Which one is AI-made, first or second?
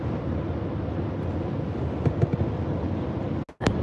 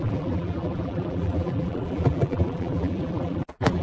second